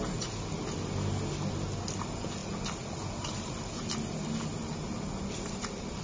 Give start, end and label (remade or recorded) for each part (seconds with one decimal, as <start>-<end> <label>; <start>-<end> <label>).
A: 0.0-6.0 recorded